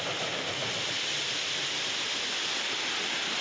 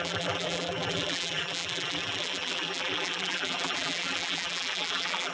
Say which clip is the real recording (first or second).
first